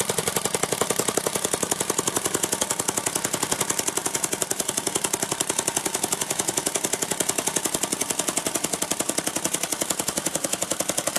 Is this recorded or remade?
remade